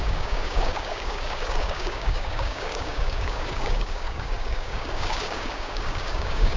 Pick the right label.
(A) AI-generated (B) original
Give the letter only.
A